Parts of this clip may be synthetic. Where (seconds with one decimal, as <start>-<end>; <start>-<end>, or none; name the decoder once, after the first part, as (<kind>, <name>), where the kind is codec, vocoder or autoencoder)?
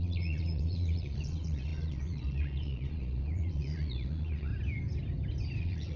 0.0-4.5 (vocoder, Vocos); 5.6-6.0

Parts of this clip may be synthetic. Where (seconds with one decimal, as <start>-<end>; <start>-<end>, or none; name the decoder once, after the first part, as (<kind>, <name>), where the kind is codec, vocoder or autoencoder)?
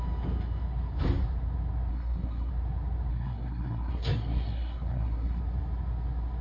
1.9-2.5 (codec, SNAC); 3.1-5.4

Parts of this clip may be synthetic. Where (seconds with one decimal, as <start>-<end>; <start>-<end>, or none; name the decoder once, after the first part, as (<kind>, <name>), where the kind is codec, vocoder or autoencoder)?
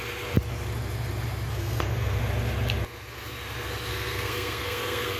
1.5-2.2 (codec, SNAC); 3.9-5.2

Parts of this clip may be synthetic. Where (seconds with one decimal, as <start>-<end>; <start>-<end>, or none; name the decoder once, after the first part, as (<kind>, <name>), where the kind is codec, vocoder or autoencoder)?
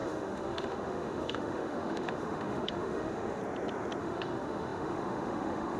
0.0-3.4 (autoencoder, DAC-VAE); 4.0-5.8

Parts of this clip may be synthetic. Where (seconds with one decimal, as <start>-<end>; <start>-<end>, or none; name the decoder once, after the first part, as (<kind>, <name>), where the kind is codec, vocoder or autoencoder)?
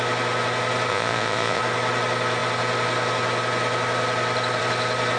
0.9-1.6 (vocoder, Vocos)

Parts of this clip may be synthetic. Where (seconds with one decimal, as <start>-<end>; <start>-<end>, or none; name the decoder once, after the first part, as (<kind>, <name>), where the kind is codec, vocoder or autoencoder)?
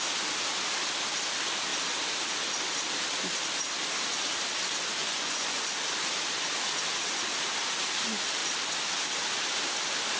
5.0-5.7 (vocoder, Vocos)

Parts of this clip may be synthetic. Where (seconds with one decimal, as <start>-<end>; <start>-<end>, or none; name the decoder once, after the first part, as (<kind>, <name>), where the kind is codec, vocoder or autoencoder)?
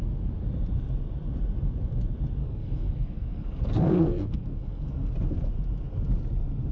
2.4-5.1 (codec, SNAC)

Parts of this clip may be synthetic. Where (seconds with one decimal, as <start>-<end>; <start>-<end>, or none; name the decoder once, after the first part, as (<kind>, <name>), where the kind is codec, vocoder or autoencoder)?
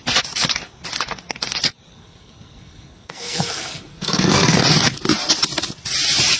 1.9-4.6 (codec, SNAC)